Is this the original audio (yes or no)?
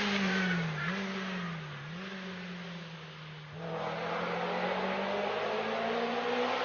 yes